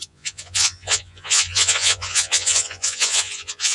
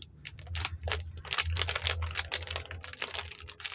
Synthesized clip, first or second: first